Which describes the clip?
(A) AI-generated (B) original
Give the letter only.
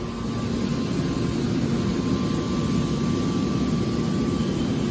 B